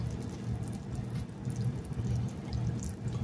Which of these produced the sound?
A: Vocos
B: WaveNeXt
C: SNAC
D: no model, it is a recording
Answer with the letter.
D